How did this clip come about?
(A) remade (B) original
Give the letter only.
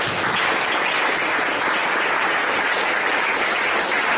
B